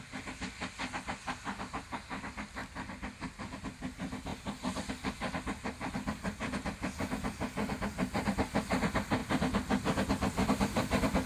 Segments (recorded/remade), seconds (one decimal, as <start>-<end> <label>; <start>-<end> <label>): 0.0-11.3 recorded